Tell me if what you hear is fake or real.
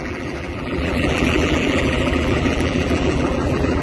fake